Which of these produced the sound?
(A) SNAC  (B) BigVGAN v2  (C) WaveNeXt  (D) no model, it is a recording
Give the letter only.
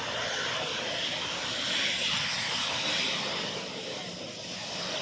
D